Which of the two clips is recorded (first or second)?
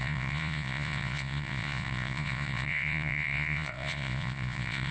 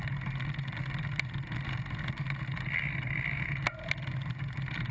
second